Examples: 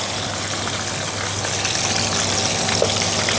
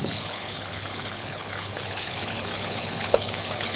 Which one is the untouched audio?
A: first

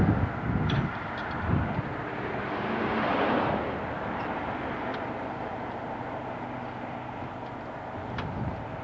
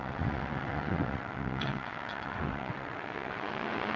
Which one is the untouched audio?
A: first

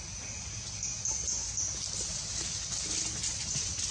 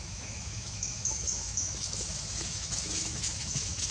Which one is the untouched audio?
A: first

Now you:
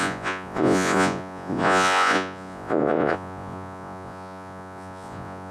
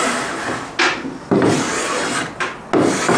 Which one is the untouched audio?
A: second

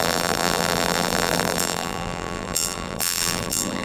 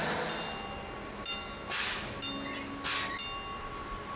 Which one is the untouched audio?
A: second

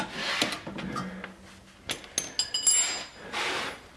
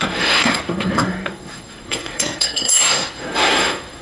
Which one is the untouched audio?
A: first